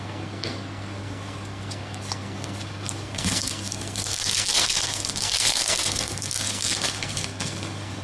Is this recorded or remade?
remade